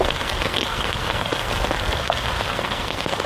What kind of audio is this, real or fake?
fake